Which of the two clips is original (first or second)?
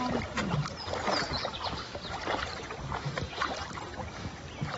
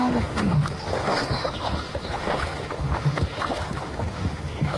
first